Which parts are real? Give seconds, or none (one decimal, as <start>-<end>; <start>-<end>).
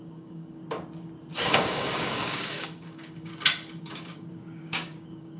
0.6-1.5; 3.3-3.8